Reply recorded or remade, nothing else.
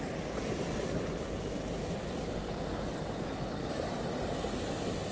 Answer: recorded